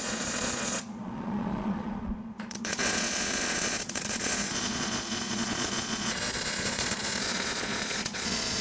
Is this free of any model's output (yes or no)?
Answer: no